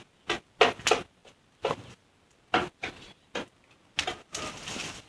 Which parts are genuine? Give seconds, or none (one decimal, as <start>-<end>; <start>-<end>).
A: 0.0-5.1